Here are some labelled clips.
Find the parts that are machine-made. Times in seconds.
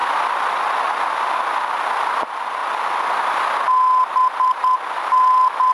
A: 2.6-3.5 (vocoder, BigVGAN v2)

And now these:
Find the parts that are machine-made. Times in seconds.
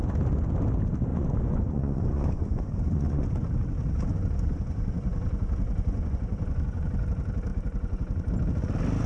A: 1.1-3.5 (vocoder, Vocos); 4.1-6.9; 7.5-8.3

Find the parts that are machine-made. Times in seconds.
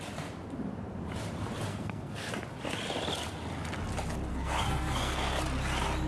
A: 1.7-2.3 (codec, SNAC); 4.3-5.4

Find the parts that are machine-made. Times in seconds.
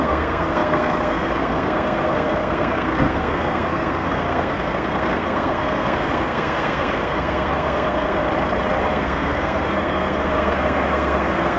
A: 0.0-8.2 (codec, SNAC); 8.8-11.6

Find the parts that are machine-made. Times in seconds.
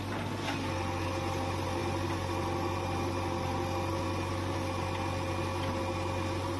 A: none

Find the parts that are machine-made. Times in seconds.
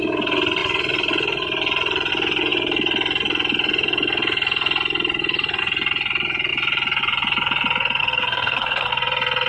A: 8.0-8.9 (codec, SNAC)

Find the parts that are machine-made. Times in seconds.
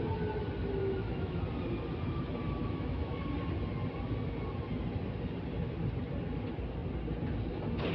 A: 0.8-1.4 (autoencoder, DAC-VAE); 2.6-3.2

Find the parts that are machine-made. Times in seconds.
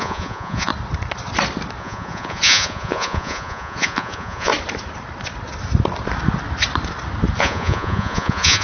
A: 0.0-0.7 (vocoder, Vocos); 1.8-4.5; 7.4-8.6